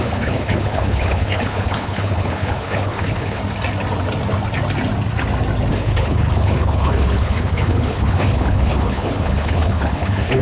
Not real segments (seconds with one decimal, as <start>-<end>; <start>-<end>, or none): 0.0-3.4; 5.7-10.4